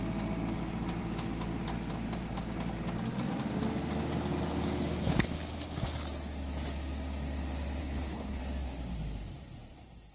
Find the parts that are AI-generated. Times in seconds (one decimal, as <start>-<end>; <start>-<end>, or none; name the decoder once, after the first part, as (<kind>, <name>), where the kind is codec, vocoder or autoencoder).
7.8-8.4 (codec, HILCodec)